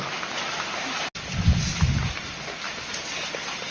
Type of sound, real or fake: real